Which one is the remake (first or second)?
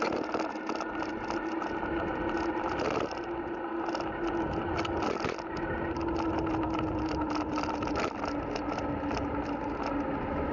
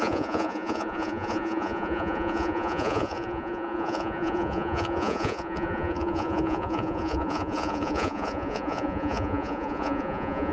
second